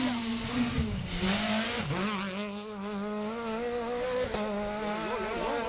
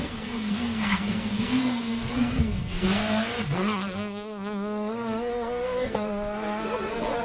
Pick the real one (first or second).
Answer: first